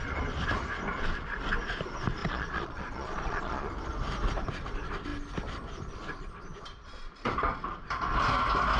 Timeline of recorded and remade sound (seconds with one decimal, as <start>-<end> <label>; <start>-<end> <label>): 0.0-2.2 recorded; 2.2-3.7 remade; 3.7-8.8 recorded